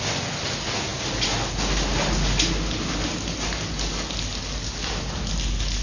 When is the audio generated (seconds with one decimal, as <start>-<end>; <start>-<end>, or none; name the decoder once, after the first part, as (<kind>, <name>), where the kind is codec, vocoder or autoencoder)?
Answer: none